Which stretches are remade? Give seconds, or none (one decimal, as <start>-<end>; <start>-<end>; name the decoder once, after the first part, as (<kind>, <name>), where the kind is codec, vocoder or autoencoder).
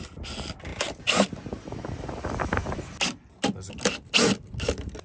none